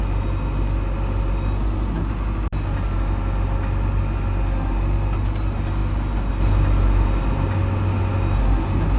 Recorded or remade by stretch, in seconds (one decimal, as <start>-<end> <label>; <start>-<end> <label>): 0.0-9.0 recorded